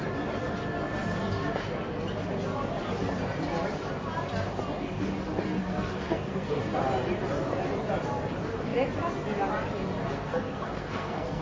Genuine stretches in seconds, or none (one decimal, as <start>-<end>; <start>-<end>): 0.0-5.6; 6.6-10.0